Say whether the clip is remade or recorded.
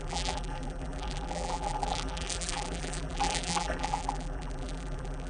remade